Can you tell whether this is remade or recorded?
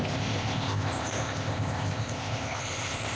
remade